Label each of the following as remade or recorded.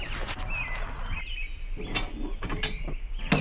recorded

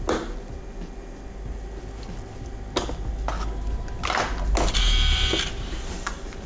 recorded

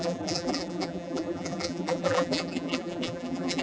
remade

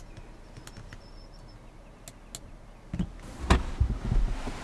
recorded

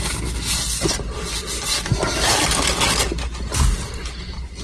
recorded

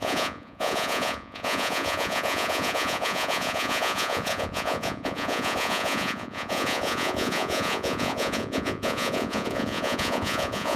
remade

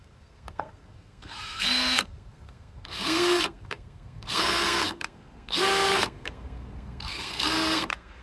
remade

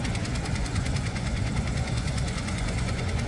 remade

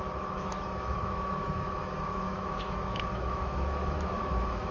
remade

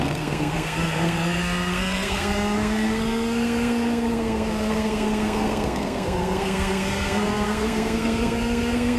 remade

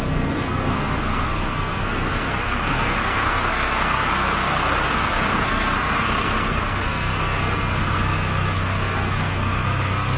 remade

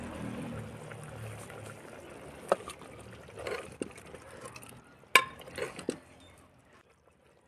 recorded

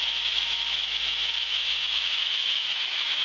remade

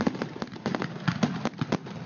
recorded